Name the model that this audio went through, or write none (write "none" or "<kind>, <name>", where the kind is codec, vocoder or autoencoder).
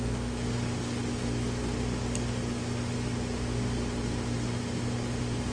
none